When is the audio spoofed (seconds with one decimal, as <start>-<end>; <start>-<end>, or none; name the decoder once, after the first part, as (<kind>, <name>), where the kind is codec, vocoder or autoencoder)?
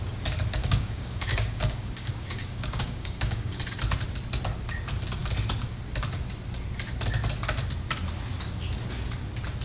0.6-3.6 (codec, DAC)